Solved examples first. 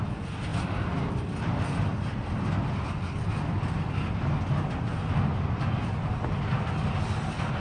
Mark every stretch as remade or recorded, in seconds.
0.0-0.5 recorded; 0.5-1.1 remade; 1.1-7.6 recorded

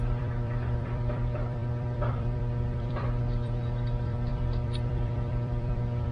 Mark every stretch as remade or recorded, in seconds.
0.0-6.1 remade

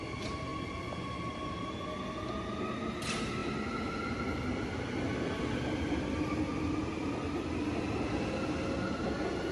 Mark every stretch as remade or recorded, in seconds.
0.0-9.5 recorded